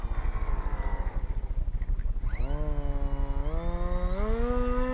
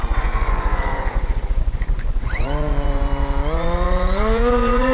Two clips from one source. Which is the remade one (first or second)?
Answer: second